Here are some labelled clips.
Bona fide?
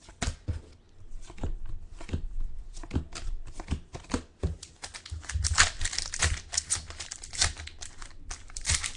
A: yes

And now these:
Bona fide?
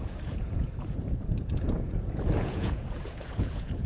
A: no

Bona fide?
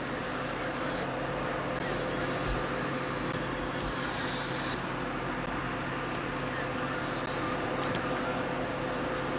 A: yes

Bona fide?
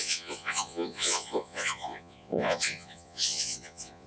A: no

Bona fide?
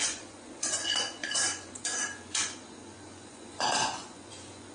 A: no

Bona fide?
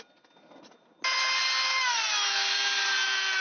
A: yes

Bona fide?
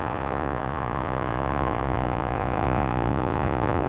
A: no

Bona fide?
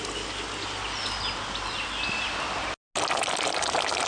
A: yes